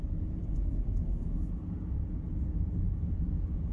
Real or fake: fake